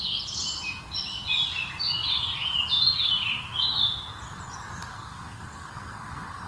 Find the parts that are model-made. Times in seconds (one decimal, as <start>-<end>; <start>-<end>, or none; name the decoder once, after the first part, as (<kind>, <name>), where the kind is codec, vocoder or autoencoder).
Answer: 4.9-6.5 (codec, SNAC)